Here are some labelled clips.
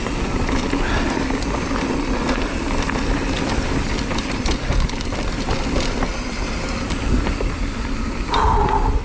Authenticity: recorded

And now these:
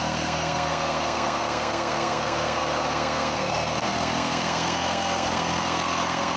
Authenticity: remade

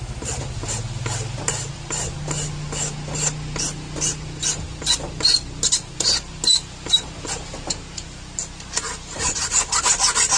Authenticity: recorded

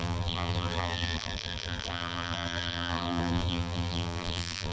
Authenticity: remade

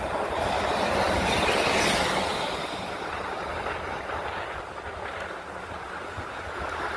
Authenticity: recorded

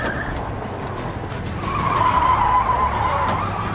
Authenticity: recorded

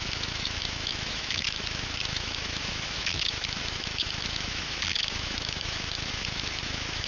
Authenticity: remade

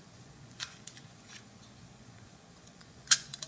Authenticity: remade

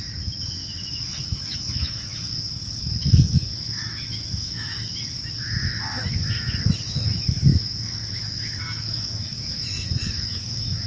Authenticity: remade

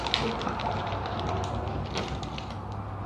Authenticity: remade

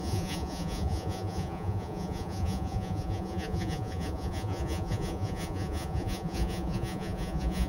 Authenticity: remade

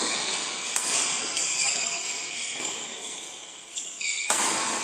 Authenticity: remade